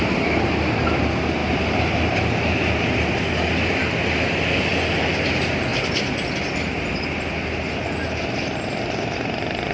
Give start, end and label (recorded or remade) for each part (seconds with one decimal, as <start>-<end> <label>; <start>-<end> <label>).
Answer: 0.0-9.7 remade